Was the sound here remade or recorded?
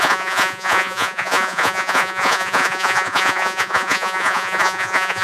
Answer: remade